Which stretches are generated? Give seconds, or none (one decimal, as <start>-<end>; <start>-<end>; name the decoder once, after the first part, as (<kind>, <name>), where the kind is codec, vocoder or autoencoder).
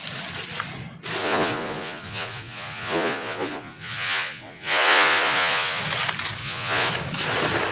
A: 1.2-5.8 (vocoder, Vocos); 6.4-6.9